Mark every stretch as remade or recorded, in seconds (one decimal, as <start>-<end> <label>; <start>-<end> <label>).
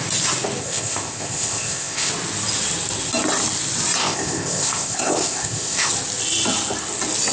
0.0-0.6 recorded; 0.6-2.1 remade; 2.1-4.0 recorded; 4.0-5.9 remade; 5.9-7.3 recorded